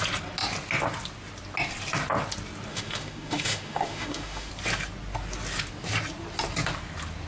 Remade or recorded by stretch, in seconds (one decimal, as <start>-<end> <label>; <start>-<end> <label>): 0.0-2.7 recorded; 2.7-4.5 remade; 4.5-7.3 recorded